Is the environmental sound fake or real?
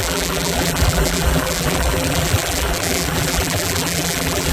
fake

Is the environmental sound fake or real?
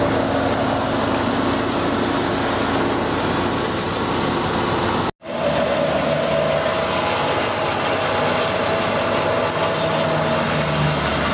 real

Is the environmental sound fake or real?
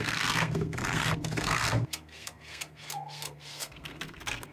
fake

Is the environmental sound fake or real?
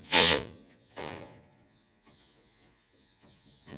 fake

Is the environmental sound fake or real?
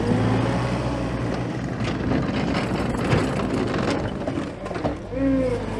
real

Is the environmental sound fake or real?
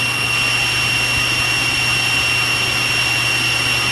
real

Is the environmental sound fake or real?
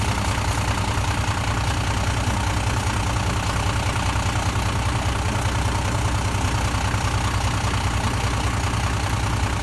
real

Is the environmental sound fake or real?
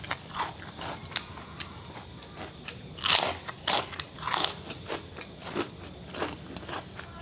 real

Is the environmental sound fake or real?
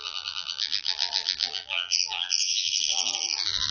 fake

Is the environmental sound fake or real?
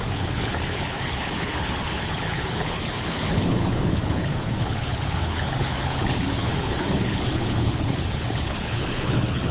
fake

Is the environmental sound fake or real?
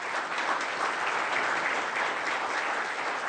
real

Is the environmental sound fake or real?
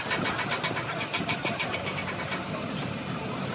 real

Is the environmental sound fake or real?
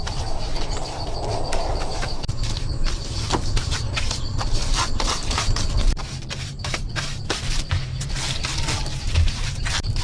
fake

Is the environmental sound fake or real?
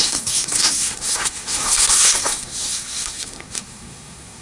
fake